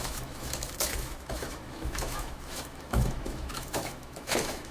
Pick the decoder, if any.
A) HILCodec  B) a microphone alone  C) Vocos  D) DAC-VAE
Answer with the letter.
D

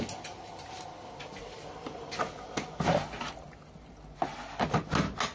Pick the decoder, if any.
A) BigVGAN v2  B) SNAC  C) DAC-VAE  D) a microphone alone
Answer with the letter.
D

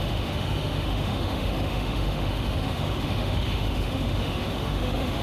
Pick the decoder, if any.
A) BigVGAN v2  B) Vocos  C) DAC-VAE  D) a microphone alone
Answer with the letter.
C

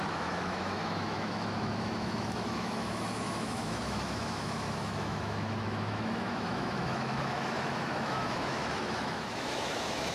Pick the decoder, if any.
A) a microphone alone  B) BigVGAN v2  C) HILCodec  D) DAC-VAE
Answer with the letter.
D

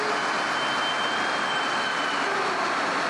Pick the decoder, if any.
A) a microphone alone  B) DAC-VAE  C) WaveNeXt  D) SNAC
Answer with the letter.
A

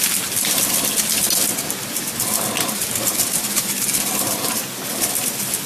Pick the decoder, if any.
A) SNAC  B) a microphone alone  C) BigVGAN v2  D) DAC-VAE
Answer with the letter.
B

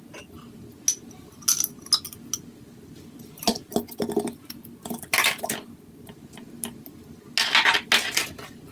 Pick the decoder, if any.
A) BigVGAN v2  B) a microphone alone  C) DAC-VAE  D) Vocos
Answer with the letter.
B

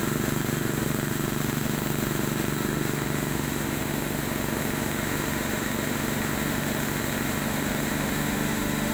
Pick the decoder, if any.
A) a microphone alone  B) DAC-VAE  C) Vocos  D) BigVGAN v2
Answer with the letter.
B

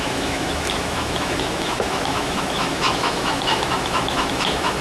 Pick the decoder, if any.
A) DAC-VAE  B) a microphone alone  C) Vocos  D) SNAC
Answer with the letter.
A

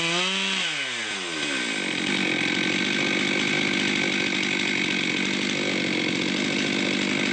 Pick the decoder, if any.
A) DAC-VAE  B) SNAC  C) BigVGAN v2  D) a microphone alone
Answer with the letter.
D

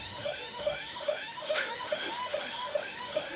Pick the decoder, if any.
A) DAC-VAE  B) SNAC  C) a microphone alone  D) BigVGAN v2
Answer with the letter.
A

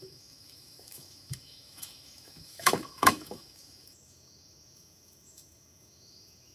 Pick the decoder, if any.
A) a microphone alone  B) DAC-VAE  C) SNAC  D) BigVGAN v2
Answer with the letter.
B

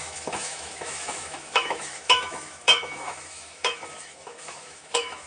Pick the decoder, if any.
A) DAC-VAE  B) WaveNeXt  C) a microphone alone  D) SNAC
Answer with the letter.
A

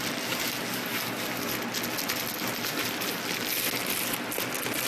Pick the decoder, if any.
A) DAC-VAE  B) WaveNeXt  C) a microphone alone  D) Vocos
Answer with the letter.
C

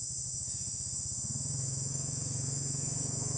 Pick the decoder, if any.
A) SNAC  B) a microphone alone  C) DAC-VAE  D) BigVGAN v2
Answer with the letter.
C